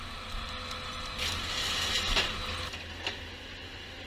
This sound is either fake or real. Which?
real